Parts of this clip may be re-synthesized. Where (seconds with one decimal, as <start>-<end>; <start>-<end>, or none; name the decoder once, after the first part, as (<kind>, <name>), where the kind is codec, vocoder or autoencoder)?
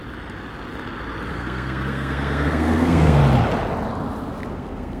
1.3-3.2 (codec, SNAC); 4.5-5.0